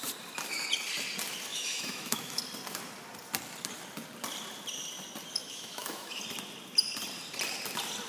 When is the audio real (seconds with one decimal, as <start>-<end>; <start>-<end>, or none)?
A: 0.0-1.5; 2.4-5.4; 6.2-8.1